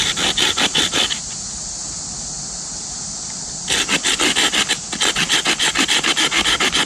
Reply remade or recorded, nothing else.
recorded